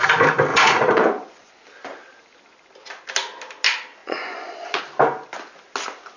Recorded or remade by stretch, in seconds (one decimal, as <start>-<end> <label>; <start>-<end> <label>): 0.0-0.5 recorded; 0.5-1.5 remade; 1.5-4.0 recorded; 4.0-4.8 remade; 4.8-6.2 recorded